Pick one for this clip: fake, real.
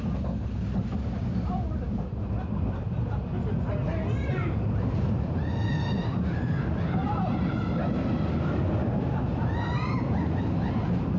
real